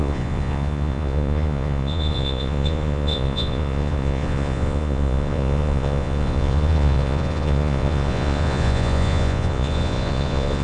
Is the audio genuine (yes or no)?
no